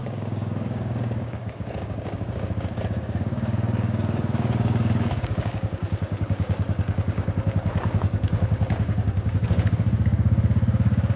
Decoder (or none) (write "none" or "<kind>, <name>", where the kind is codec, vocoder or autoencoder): codec, DAC